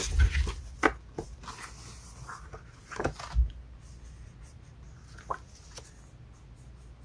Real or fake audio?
real